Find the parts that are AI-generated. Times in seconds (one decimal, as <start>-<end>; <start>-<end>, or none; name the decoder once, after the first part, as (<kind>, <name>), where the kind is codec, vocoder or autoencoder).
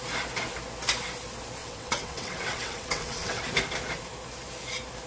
1.6-3.4 (vocoder, WaveNeXt)